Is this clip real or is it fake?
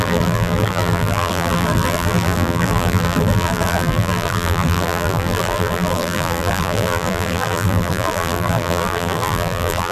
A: fake